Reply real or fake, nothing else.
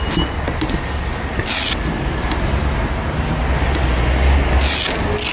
real